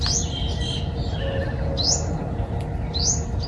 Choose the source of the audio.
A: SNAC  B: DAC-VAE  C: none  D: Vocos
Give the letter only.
C